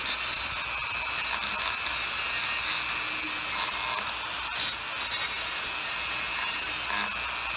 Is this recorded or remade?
recorded